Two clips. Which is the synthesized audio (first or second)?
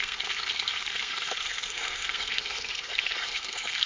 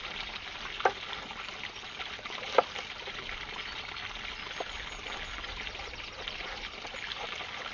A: first